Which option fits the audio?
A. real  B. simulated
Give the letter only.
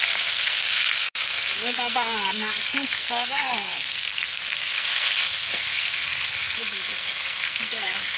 B